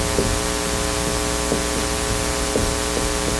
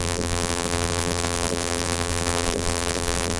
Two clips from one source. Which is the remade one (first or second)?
second